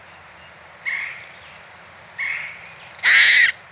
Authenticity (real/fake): real